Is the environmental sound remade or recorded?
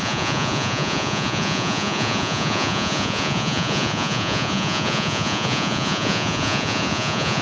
remade